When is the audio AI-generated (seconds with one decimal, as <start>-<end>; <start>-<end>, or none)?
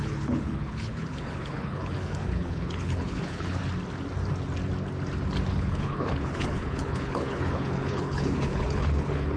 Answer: 0.0-3.6; 5.5-9.4